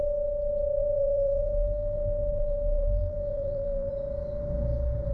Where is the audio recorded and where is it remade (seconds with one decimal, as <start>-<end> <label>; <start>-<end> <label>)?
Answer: 0.0-0.8 recorded; 0.8-3.9 remade; 3.9-5.1 recorded